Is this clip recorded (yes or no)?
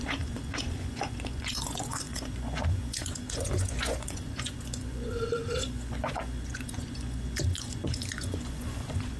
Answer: no